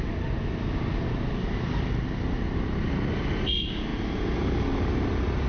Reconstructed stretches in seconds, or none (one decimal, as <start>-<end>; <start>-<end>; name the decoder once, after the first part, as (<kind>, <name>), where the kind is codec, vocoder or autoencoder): none